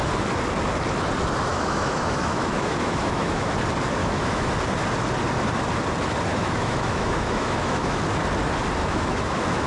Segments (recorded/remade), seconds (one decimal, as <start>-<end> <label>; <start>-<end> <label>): 0.0-1.5 recorded; 1.5-3.5 remade; 3.5-4.0 recorded; 4.0-4.5 remade; 4.5-6.3 recorded; 6.3-8.0 remade; 8.0-8.8 recorded; 8.8-9.7 remade